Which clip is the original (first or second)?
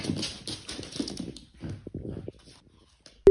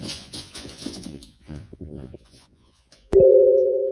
first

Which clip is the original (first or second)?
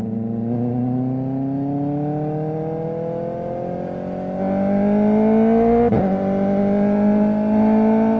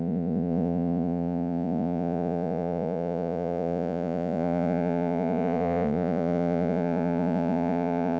first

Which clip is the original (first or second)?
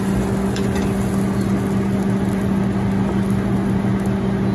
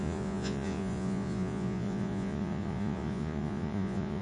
first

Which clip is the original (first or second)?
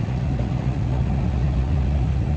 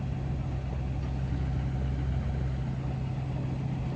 second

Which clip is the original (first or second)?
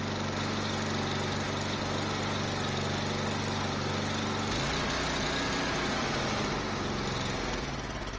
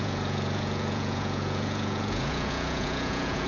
first